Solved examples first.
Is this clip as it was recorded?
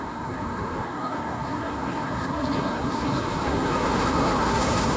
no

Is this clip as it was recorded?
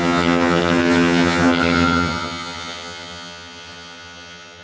no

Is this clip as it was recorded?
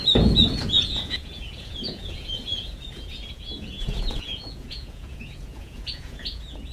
no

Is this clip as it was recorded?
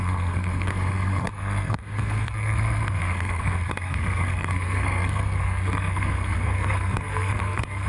no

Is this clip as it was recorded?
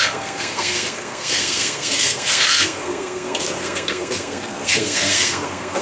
no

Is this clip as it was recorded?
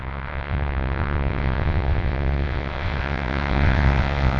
no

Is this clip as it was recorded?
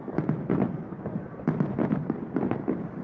yes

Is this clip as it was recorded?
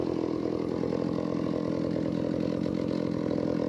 yes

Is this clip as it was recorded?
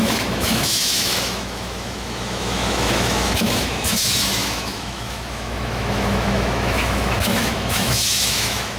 no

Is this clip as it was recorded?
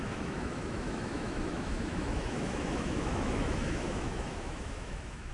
no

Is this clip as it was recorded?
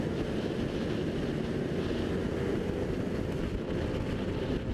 yes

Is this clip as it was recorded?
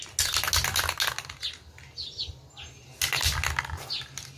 yes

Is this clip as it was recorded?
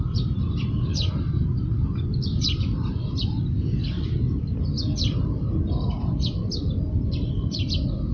no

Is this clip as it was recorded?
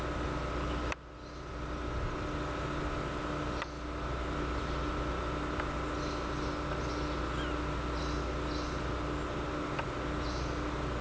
yes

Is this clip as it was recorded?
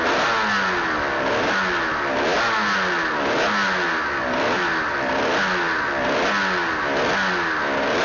yes